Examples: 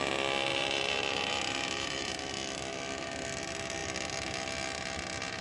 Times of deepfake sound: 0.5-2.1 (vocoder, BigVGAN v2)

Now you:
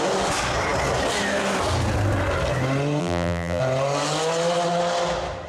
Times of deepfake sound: 3.0-3.6 (vocoder, BigVGAN v2)